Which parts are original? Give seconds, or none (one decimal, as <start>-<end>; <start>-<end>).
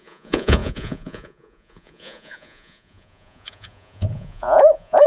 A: none